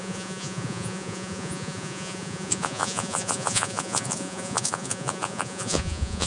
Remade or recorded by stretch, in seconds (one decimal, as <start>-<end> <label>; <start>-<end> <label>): 0.0-6.3 remade